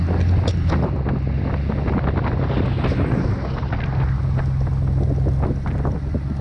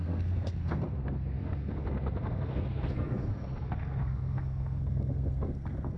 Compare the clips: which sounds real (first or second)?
first